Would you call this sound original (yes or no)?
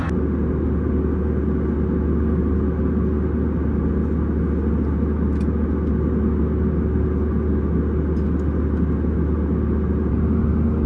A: yes